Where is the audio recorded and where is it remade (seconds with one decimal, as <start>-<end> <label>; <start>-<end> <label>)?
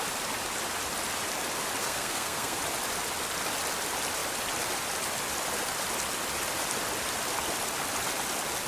0.0-1.8 recorded; 1.8-2.6 remade; 2.6-8.7 recorded